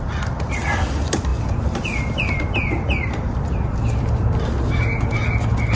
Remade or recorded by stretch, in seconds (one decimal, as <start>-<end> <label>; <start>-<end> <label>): 0.0-5.8 recorded